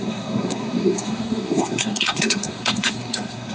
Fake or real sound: fake